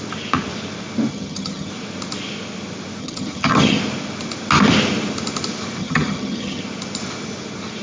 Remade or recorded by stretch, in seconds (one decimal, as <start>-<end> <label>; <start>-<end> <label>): 0.0-1.1 recorded; 1.1-1.7 remade; 1.7-3.0 recorded; 3.0-3.8 remade; 3.8-5.8 recorded; 5.8-6.6 remade; 6.6-7.8 recorded